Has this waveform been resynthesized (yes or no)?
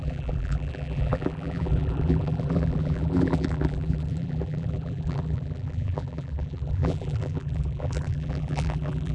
yes